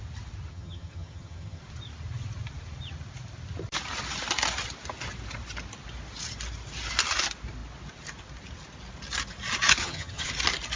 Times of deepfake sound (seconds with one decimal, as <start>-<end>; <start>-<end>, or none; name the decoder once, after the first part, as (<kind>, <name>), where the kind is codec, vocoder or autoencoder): 0.5-1.6 (vocoder, HiFi-GAN); 9.8-10.3